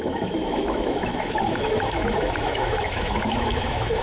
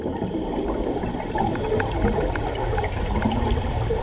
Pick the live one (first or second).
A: second